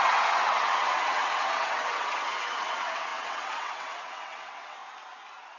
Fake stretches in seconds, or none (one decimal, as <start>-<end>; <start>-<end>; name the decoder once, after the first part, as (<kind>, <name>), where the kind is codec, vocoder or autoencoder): 0.0-4.8 (vocoder, WaveNeXt)